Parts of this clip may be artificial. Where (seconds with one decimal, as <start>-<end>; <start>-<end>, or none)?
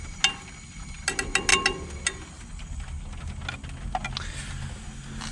none